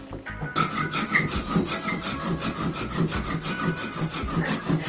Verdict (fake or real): real